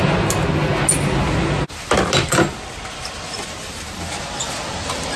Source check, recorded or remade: recorded